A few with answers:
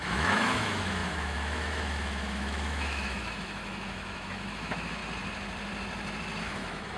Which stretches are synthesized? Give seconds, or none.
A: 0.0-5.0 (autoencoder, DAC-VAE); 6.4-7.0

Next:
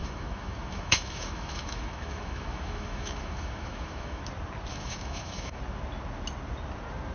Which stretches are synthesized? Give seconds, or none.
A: 0.0-4.2 (autoencoder, DAC-VAE); 4.7-5.6

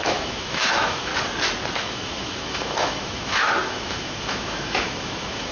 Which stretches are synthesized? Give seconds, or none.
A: 0.0-1.1 (autoencoder, DAC-VAE); 1.8-5.5

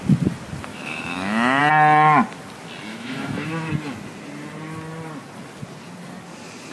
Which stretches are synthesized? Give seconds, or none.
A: 0.7-1.6 (autoencoder, DAC-VAE); 2.9-3.7

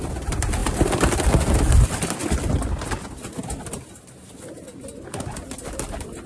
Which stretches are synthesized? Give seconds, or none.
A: none

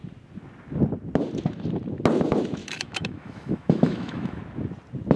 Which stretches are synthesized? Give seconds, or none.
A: 2.6-4.4 (autoencoder, DAC-VAE)

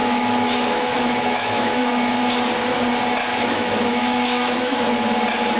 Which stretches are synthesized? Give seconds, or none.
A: 0.0-2.2 (autoencoder, DAC-VAE); 3.3-4.9